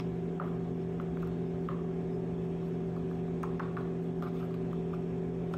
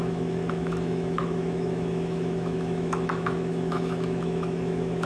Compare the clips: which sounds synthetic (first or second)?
second